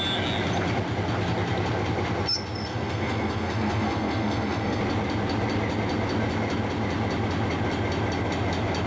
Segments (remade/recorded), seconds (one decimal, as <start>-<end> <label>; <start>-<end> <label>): 0.0-2.7 recorded; 2.7-4.8 remade; 4.8-8.9 recorded